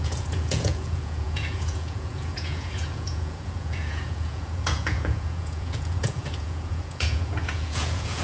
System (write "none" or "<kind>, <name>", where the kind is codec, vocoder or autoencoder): vocoder, Vocos